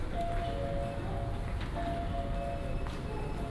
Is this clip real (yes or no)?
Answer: yes